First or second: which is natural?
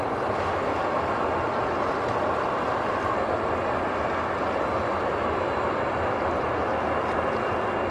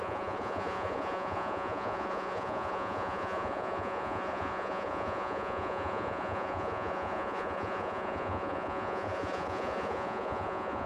first